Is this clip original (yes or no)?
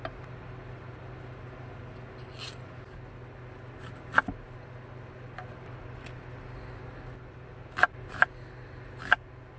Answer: yes